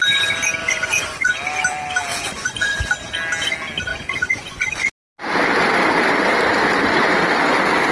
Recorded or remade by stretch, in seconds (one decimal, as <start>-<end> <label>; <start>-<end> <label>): 0.0-0.6 recorded; 0.6-1.3 remade; 1.3-2.1 recorded; 2.1-2.8 remade; 2.8-3.9 recorded; 3.9-4.9 remade; 4.9-7.9 recorded